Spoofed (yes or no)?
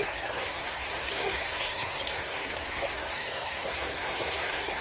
yes